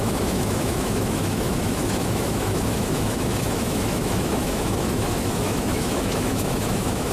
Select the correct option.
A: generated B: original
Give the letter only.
A